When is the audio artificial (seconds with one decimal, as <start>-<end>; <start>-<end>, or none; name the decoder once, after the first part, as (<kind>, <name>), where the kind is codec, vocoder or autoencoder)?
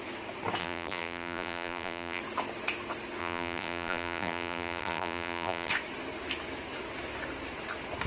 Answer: 0.6-2.2 (vocoder, BigVGAN v2); 3.2-5.7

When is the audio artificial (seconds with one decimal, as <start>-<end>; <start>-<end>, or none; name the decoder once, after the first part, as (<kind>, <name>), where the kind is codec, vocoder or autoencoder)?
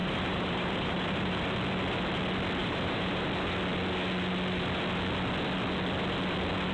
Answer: 0.0-1.4 (vocoder, BigVGAN v2); 2.6-3.2